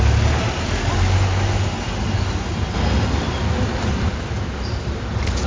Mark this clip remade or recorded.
recorded